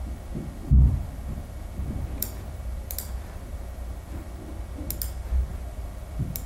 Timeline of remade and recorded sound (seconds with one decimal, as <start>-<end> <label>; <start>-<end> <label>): 0.0-0.6 recorded; 0.6-4.3 remade; 4.3-5.5 recorded; 5.5-6.5 remade